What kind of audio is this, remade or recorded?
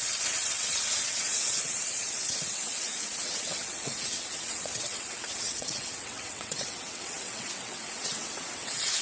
remade